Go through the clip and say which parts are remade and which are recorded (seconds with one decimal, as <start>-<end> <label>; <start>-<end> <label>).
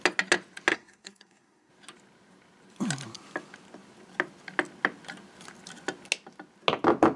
0.0-0.7 recorded; 0.7-1.7 remade; 1.7-7.2 recorded